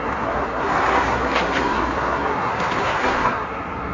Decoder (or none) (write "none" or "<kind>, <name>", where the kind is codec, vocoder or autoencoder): codec, SNAC